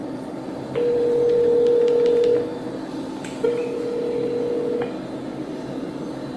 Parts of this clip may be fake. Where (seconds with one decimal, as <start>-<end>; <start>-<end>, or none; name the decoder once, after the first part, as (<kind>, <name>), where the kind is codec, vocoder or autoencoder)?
0.0-2.2 (vocoder, BigVGAN v2); 5.3-6.4